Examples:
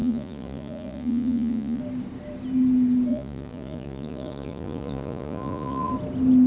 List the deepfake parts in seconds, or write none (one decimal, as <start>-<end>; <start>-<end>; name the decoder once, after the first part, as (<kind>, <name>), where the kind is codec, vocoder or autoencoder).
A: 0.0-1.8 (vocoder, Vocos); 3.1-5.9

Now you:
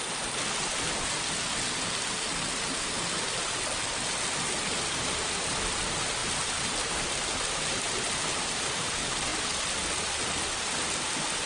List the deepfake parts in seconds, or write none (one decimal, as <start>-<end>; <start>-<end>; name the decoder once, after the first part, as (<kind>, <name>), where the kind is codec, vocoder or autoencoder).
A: none

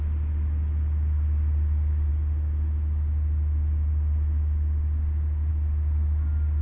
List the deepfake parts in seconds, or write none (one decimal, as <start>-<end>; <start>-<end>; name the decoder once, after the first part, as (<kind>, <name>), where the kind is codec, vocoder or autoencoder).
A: none